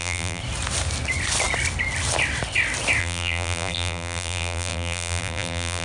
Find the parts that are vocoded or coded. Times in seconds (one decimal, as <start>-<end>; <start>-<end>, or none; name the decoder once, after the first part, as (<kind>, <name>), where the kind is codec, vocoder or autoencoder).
0.0-0.4 (vocoder, BigVGAN v2); 3.0-5.8